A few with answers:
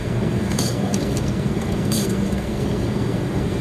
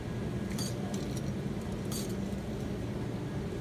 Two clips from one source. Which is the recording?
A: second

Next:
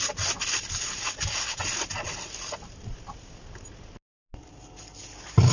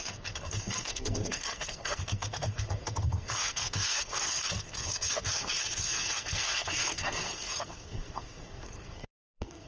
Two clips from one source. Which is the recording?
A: first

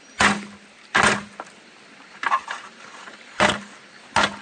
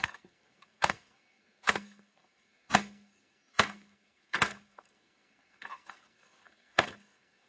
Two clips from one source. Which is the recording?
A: first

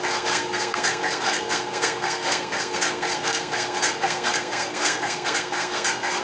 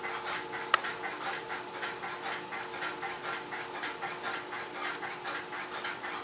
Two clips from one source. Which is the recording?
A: second